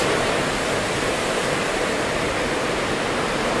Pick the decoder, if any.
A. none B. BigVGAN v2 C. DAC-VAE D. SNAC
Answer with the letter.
B